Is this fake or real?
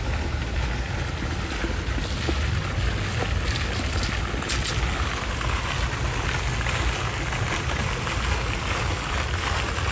real